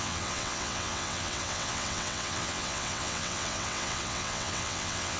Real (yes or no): no